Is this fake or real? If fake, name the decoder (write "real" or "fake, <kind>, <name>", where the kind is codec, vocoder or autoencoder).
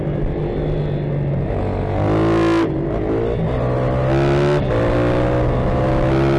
real